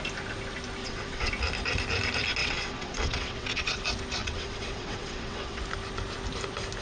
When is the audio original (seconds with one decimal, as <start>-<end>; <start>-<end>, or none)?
0.0-0.8; 1.3-2.4; 3.8-4.2; 5.6-6.8